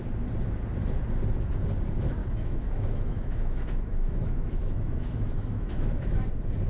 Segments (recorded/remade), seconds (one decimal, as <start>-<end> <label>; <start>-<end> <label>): 0.0-2.2 recorded; 2.2-6.2 remade; 6.2-6.7 recorded